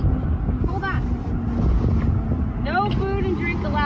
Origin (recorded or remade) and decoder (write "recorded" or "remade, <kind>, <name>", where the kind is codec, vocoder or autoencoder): recorded